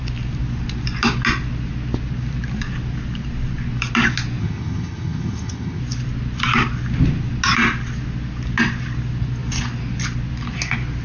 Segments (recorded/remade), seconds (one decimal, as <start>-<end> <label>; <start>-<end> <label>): 0.0-4.4 recorded; 4.4-5.8 remade; 5.8-11.0 recorded